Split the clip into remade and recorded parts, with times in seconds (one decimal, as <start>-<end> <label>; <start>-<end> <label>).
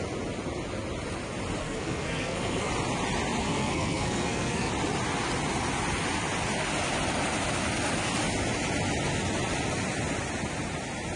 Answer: 0.0-1.6 recorded; 1.6-2.7 remade; 2.7-3.4 recorded; 3.4-4.7 remade; 4.7-11.2 recorded